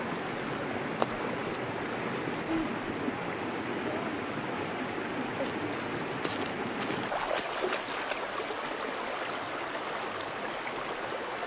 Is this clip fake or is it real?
real